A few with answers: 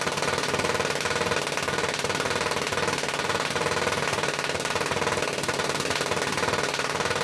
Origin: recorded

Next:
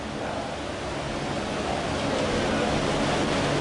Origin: recorded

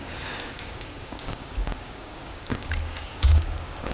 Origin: remade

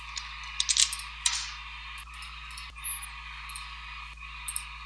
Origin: recorded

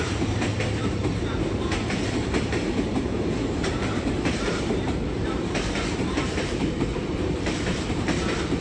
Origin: remade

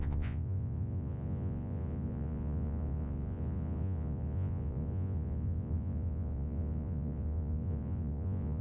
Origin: remade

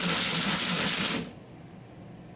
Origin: recorded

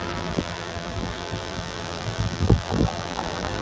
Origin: remade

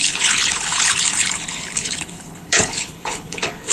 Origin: remade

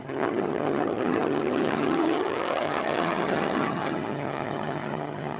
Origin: remade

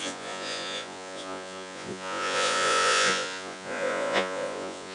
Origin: remade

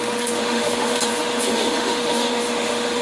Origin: remade